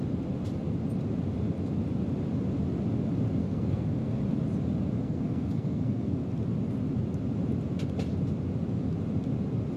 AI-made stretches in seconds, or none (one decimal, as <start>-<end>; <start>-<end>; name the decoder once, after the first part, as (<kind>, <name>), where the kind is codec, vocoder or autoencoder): 3.4-4.2 (codec, SNAC); 5.0-6.2